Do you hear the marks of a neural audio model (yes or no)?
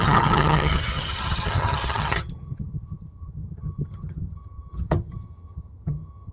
yes